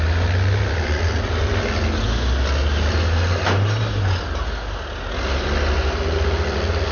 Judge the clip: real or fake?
real